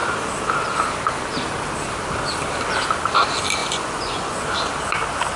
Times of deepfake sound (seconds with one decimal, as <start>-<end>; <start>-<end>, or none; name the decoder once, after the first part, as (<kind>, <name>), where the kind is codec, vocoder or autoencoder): 3.6-4.5 (vocoder, Vocos)